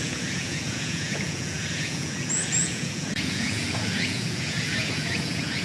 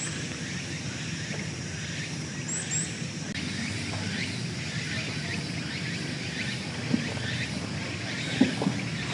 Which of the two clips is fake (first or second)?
first